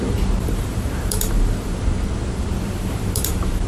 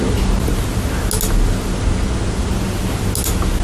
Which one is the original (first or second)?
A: second